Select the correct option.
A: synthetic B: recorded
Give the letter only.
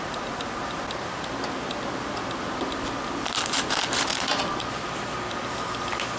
B